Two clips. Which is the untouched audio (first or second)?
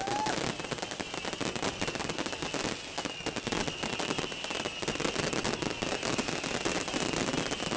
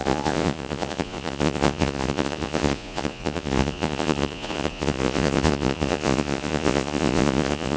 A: first